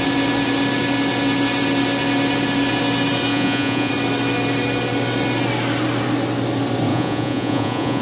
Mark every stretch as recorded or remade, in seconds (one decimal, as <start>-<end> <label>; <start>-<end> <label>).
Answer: 0.0-3.3 recorded; 3.3-3.9 remade; 3.9-6.9 recorded; 6.9-8.0 remade